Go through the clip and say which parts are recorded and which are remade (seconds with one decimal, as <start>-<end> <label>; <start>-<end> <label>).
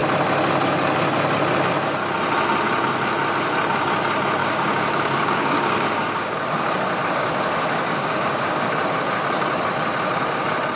0.0-4.4 recorded; 4.4-6.8 remade; 6.8-7.2 recorded; 7.2-8.7 remade; 8.7-10.8 recorded